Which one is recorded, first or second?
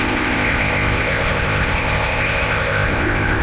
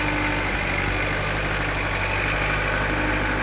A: second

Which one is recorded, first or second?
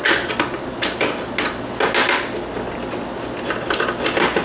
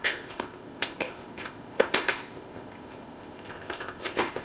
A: first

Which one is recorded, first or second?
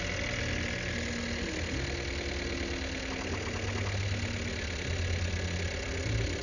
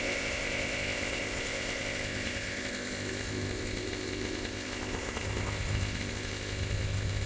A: first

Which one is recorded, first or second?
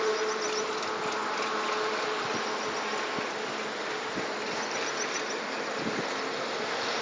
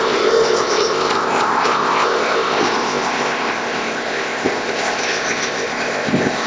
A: first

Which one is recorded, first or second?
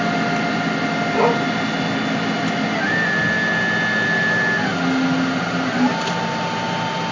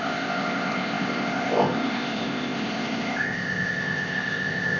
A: first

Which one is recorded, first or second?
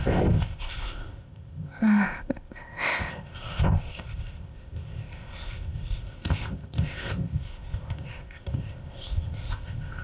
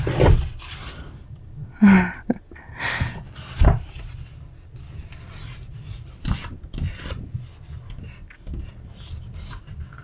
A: second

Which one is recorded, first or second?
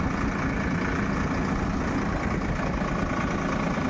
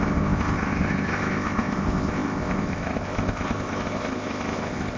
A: first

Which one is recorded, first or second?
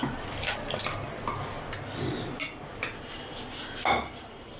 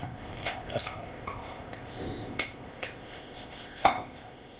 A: first